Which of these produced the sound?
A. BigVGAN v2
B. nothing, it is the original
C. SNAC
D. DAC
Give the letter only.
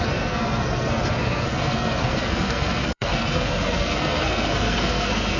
C